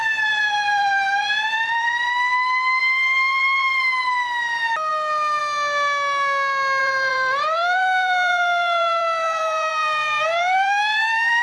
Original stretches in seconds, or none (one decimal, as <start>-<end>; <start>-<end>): 2.1-2.8; 3.8-6.8